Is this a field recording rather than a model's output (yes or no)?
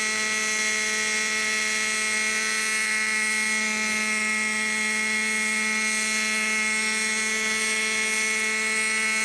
yes